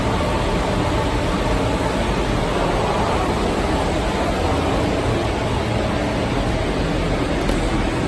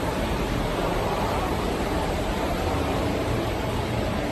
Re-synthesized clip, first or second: second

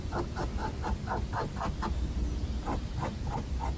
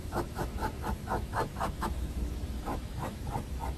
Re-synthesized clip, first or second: second